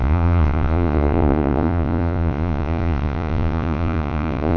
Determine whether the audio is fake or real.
fake